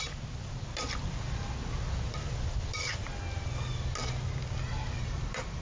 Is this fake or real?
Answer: real